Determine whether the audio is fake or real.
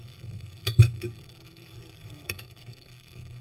fake